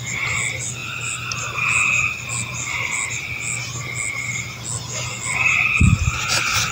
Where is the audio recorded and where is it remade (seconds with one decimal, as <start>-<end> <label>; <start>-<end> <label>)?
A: 0.0-6.7 recorded